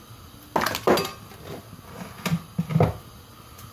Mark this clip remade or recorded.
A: recorded